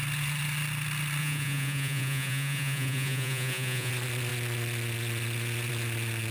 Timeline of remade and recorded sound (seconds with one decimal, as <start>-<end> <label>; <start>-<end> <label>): 0.0-1.2 recorded; 1.2-3.9 remade; 3.9-6.3 recorded

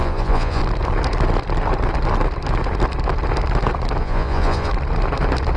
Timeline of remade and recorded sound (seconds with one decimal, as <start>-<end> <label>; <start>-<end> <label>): 0.0-0.6 remade; 0.6-4.0 recorded; 4.0-4.7 remade; 4.7-5.6 recorded

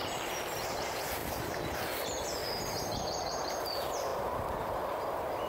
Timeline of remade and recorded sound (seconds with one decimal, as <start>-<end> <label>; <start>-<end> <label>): 0.0-2.4 remade; 2.4-3.0 recorded; 3.0-5.5 remade

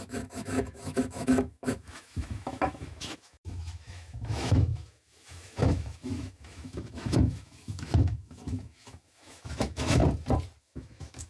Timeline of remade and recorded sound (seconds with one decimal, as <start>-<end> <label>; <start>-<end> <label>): 0.0-10.0 remade; 10.0-10.6 recorded; 10.6-11.3 remade